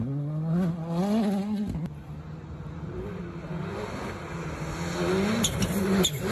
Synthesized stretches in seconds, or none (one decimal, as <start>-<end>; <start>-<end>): none